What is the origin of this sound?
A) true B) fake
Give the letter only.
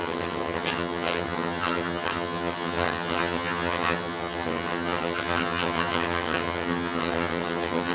B